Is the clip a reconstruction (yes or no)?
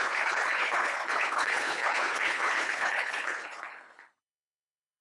yes